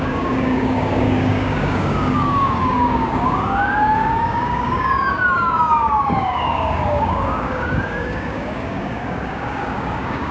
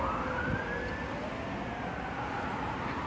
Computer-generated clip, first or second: first